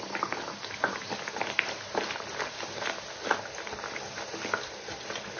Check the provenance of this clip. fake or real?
real